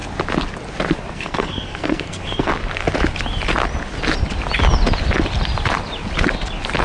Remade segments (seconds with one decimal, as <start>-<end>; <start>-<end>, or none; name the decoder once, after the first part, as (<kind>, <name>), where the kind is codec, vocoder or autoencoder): 1.1-2.5 (codec, SNAC)